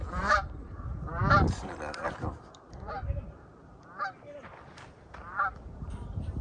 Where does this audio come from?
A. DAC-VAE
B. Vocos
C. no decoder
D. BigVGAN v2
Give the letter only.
D